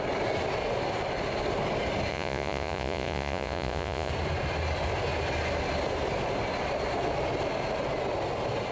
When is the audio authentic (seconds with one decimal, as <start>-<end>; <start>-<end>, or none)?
0.0-2.1; 4.1-8.7